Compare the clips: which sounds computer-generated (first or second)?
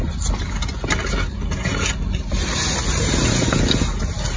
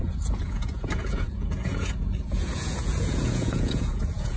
second